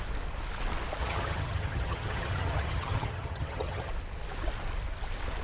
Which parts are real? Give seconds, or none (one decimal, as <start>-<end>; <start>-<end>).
0.0-1.0; 3.9-5.4